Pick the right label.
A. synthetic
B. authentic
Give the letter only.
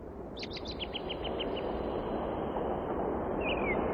B